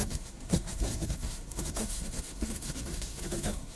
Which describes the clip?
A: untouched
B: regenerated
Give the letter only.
B